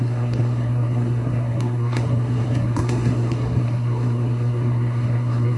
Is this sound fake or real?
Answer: fake